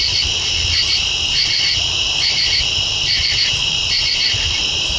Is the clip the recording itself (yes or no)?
no